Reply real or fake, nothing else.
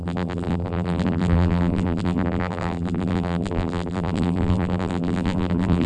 fake